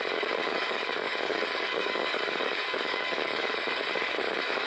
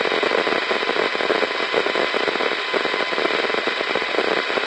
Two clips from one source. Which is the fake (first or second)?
first